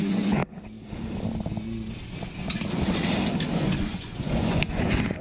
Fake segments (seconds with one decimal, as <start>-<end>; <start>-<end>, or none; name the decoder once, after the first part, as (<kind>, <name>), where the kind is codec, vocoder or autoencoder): 0.0-0.4 (vocoder, Vocos); 3.5-5.2